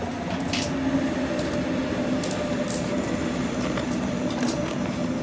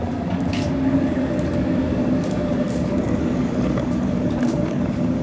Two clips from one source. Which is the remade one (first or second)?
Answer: second